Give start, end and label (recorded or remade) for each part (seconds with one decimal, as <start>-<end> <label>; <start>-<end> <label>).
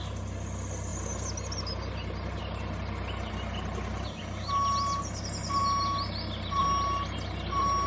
0.0-7.9 recorded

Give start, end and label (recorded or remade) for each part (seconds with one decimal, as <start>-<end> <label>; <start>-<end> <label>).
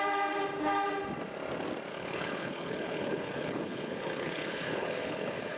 0.0-1.9 recorded; 1.9-5.6 remade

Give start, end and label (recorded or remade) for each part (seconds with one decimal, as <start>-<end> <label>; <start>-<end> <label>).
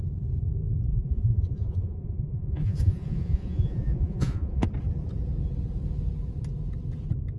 0.0-0.9 recorded; 0.9-4.7 remade; 4.7-7.4 recorded